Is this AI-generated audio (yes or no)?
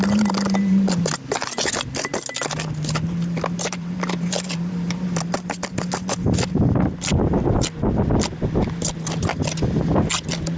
no